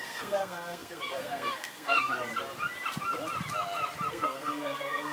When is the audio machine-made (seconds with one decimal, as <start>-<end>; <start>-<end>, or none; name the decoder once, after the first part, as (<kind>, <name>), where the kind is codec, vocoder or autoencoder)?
0.0-2.3 (codec, SNAC); 4.1-5.1